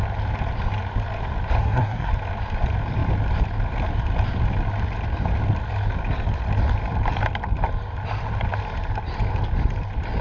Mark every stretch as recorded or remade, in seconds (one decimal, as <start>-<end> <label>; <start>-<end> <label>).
0.0-1.6 recorded; 1.6-2.1 remade; 2.1-10.2 recorded

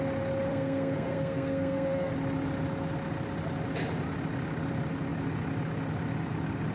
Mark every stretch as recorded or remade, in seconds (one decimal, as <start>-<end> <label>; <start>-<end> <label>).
0.0-0.5 recorded; 0.5-2.1 remade; 2.1-6.7 recorded

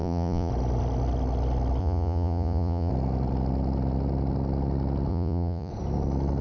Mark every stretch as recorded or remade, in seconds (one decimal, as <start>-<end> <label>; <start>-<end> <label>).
0.0-0.5 remade; 0.5-1.8 recorded; 1.8-2.9 remade; 2.9-5.1 recorded; 5.1-5.7 remade; 5.7-6.4 recorded